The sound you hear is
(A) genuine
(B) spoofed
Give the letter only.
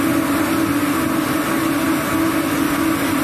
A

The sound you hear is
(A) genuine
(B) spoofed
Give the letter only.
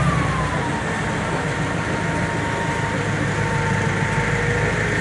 A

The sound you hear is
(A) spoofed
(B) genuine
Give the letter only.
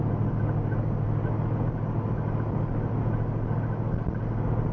B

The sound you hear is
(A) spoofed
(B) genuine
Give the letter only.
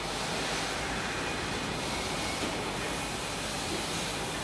B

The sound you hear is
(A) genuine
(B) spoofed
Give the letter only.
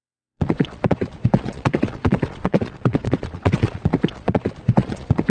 B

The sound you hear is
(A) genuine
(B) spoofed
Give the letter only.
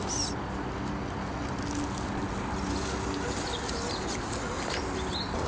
A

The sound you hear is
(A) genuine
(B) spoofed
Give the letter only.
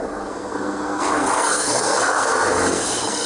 B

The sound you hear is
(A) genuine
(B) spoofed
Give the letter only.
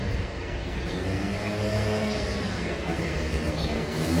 B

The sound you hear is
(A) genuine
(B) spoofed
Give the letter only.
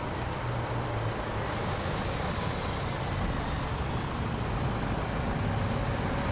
A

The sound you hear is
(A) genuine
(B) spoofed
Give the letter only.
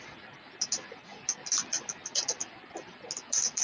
A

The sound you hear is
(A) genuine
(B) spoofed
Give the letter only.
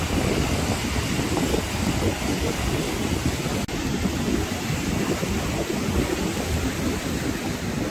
A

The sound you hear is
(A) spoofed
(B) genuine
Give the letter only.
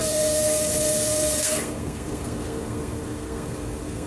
A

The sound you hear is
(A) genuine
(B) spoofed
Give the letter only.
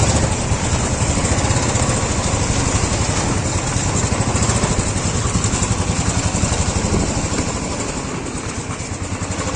A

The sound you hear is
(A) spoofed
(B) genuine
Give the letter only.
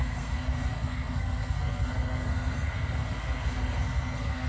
A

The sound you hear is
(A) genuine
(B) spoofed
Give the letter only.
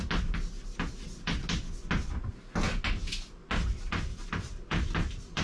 A